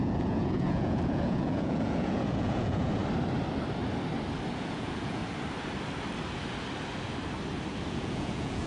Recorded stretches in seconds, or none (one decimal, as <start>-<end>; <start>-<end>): 3.0-4.5; 5.2-7.9